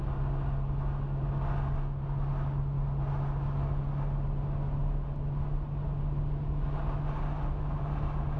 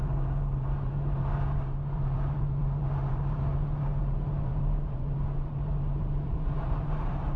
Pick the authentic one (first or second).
first